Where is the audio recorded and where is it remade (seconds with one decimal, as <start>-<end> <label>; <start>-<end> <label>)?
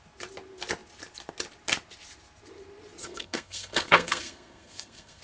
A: 0.0-3.0 recorded; 3.0-5.2 remade